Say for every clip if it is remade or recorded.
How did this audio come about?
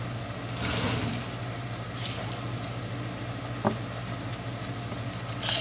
recorded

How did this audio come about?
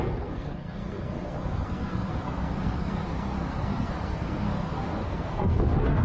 remade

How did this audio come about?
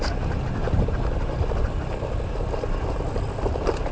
recorded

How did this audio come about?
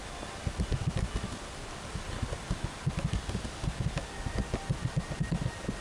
recorded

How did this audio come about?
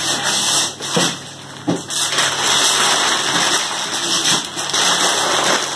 recorded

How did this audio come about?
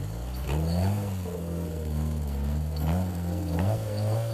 remade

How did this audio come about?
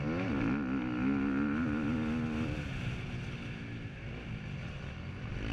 recorded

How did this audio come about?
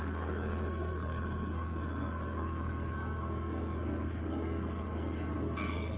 remade